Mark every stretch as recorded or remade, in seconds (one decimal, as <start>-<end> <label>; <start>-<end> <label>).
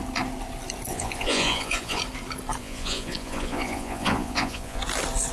0.0-0.9 recorded; 0.9-2.0 remade; 2.0-2.6 recorded; 2.6-4.8 remade; 4.8-5.3 recorded